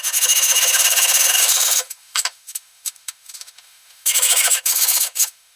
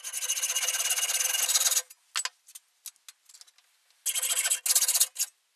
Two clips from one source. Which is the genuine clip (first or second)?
second